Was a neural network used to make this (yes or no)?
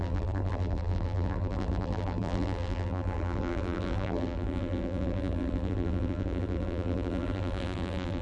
yes